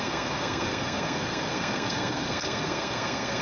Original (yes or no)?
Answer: no